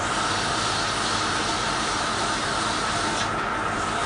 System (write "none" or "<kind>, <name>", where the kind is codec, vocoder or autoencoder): none